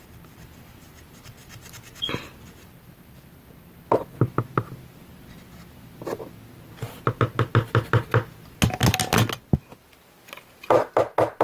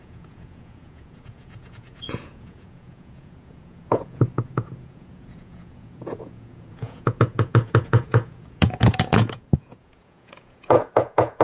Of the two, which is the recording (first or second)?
first